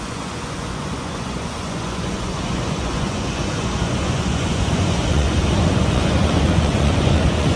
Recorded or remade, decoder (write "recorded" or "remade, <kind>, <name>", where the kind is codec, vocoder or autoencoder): remade, vocoder, Vocos